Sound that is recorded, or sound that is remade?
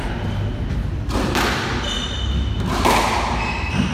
recorded